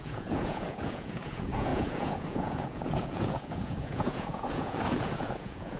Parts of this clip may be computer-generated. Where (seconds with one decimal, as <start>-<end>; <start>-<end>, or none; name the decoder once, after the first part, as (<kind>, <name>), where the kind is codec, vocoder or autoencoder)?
0.0-5.8 (vocoder, Vocos)